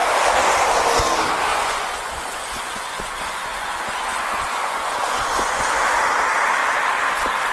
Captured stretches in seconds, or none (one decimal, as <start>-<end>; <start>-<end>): 0.0-1.5; 6.0-7.5